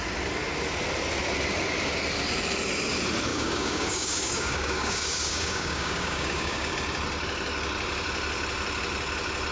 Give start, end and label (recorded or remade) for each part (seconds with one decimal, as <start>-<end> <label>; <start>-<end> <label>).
0.0-3.3 recorded; 3.3-6.7 remade; 6.7-9.5 recorded